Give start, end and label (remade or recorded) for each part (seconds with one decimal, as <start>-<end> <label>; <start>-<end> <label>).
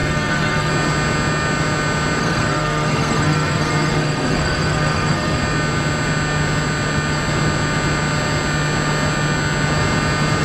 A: 0.0-0.7 remade; 0.7-2.2 recorded; 2.2-5.4 remade; 5.4-10.4 recorded